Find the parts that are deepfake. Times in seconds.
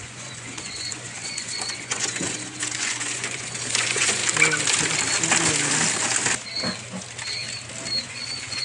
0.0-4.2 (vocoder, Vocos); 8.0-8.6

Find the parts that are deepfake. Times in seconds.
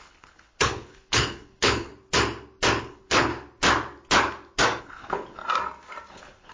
0.0-1.9 (codec, HILCodec); 2.8-3.3; 4.8-5.4; 6.1-6.5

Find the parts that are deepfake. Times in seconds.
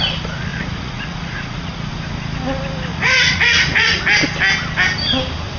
0.5-1.9 (vocoder, Vocos); 2.9-4.0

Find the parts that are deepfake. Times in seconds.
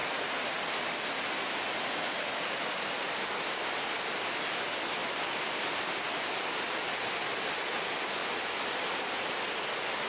none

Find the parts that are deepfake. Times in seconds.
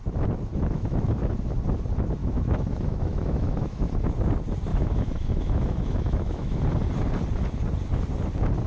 0.5-1.1 (autoencoder, DAC-VAE); 2.2-3.9; 4.7-6.6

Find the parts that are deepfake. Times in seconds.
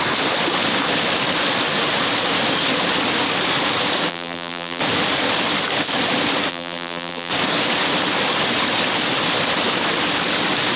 4.1-4.8 (vocoder, BigVGAN v2); 6.5-7.3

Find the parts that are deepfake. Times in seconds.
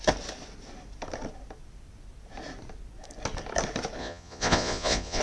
4.0-5.2 (vocoder, Vocos)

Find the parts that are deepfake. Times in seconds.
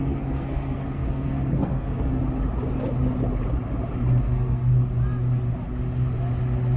0.0-2.2 (codec, SNAC); 4.2-4.7